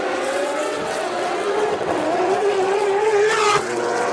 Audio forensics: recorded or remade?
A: remade